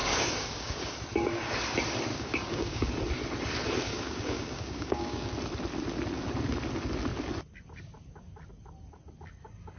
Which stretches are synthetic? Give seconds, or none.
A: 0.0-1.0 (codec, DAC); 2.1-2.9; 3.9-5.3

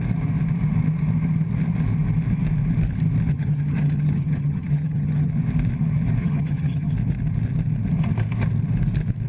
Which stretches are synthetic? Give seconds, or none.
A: 3.3-5.3 (vocoder, HiFi-GAN); 6.2-6.9

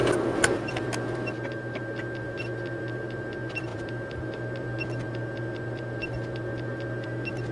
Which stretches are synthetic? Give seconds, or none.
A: none

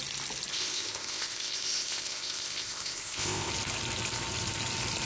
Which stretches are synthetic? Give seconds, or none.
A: 0.5-3.5 (codec, ZipCodec)

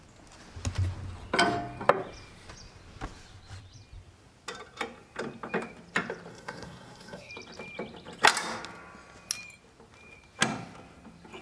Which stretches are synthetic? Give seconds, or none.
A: 6.3-7.3 (codec, SNAC)